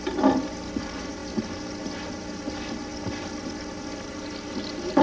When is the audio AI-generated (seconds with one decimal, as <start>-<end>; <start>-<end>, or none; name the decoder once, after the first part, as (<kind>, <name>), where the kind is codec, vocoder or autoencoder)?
none